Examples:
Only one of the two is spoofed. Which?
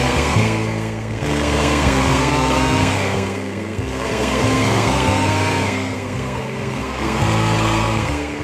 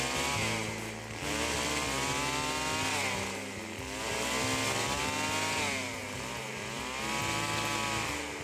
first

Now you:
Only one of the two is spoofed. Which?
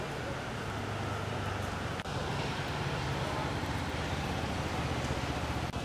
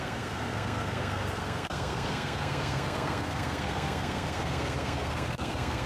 second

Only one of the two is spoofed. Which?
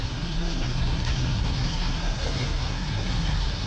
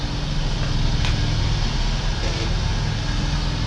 first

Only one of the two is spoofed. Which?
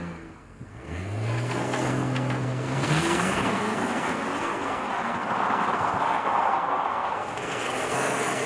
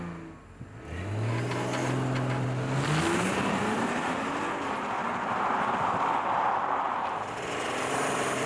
first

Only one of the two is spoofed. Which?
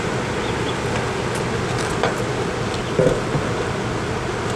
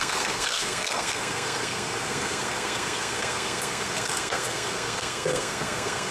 second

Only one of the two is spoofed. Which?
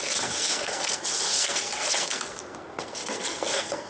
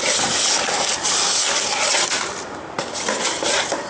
first